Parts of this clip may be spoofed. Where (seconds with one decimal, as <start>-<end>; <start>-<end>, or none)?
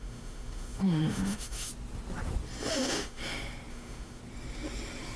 0.0-1.7; 2.7-3.2; 3.7-4.2